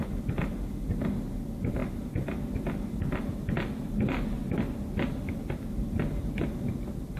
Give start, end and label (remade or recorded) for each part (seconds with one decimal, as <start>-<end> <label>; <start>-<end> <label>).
0.0-7.2 recorded